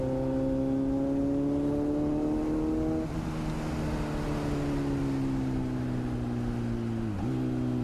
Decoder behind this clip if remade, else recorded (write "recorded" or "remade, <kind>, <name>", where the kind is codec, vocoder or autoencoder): recorded